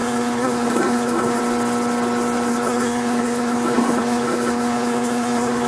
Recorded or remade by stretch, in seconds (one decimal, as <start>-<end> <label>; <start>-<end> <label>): 0.0-1.4 remade; 1.4-2.5 recorded; 2.5-5.7 remade